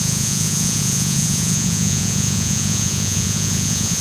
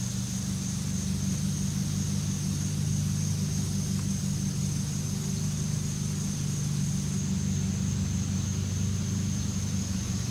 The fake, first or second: first